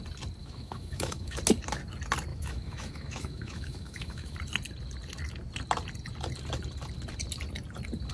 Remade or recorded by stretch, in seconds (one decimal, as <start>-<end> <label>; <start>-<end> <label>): 0.0-0.4 recorded; 0.4-1.4 remade; 1.4-2.3 recorded; 2.3-4.4 remade; 4.4-8.1 recorded